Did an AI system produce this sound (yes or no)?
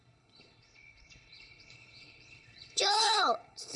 yes